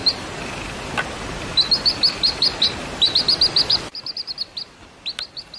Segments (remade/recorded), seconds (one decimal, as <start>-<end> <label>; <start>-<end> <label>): 0.0-5.6 recorded